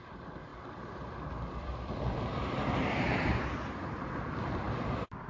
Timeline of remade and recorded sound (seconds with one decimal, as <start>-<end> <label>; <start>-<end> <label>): 0.0-5.3 remade